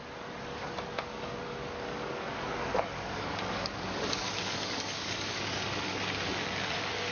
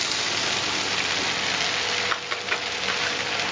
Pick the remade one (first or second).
first